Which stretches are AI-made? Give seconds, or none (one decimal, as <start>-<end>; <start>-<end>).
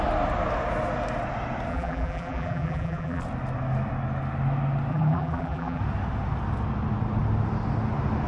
1.7-3.2; 4.9-5.8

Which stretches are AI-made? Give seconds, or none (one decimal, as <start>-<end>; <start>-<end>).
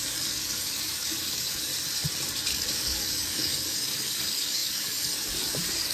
0.0-1.7; 2.5-5.9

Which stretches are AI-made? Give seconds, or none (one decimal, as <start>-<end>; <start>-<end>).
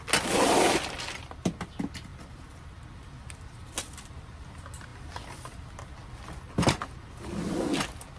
none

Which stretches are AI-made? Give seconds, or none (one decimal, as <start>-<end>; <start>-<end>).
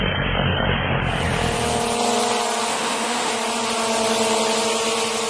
2.7-3.3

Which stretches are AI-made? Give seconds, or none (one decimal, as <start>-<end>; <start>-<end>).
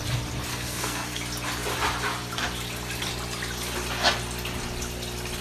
0.5-1.2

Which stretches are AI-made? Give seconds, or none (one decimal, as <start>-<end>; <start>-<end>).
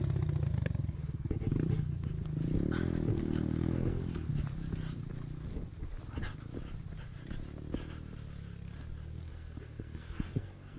3.1-4.3; 9.3-10.8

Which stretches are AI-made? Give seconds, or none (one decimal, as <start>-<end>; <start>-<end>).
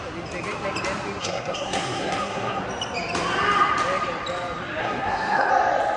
1.2-2.6; 4.8-5.5